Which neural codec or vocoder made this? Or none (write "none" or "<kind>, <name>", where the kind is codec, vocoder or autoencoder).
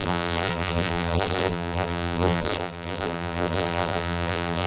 vocoder, BigVGAN v2